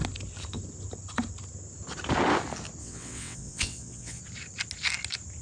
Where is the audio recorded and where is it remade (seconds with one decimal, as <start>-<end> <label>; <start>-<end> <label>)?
0.0-2.8 recorded; 2.8-4.2 remade; 4.2-5.4 recorded

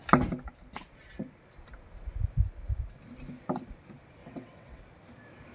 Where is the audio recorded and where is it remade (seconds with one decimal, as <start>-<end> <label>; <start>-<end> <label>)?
0.0-4.2 recorded; 4.2-4.8 remade; 4.8-5.5 recorded

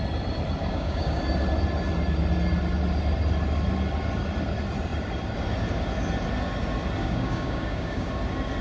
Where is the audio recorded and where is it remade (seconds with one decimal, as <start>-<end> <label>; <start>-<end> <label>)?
0.0-0.6 recorded; 0.6-1.2 remade; 1.2-7.0 recorded; 7.0-8.1 remade; 8.1-8.6 recorded

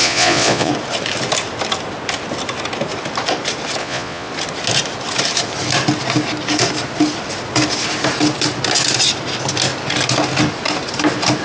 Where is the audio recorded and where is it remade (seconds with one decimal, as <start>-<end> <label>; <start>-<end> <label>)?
0.0-0.7 remade; 0.7-3.8 recorded; 3.8-4.3 remade; 4.3-11.4 recorded